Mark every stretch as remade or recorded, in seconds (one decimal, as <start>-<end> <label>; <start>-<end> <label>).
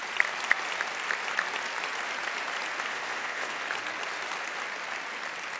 0.0-2.9 recorded; 2.9-3.6 remade; 3.6-5.6 recorded